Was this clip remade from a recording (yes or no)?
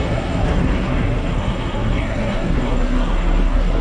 yes